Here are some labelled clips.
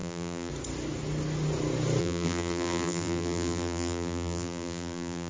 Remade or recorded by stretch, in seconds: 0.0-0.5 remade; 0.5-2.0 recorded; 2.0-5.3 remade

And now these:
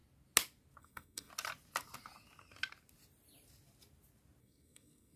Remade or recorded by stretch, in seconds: 0.0-0.8 recorded; 0.8-1.3 remade; 1.3-4.4 recorded; 4.4-5.2 remade

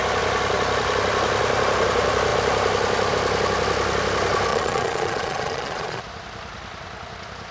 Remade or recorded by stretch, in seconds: 0.0-4.5 recorded; 4.5-6.0 remade; 6.0-7.5 recorded

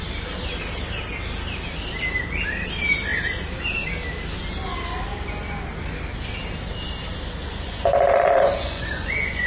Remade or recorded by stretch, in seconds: 0.0-7.5 recorded; 7.5-9.5 remade

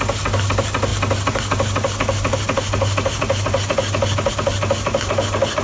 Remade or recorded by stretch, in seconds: 0.0-5.6 recorded